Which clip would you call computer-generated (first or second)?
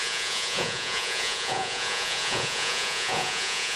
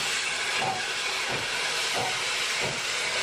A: first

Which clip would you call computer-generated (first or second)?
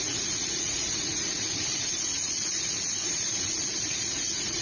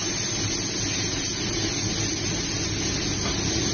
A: first